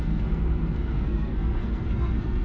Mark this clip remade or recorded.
remade